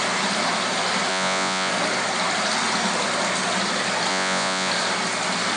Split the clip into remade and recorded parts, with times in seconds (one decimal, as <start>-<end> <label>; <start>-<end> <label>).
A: 0.0-1.1 recorded; 1.1-1.7 remade; 1.7-4.1 recorded; 4.1-4.7 remade; 4.7-5.6 recorded